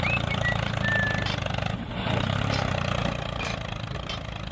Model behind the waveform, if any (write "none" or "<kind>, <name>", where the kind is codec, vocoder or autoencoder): none